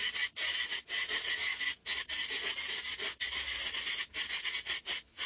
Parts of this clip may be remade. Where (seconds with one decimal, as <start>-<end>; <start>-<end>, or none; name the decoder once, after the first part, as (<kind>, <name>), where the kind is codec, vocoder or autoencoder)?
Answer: none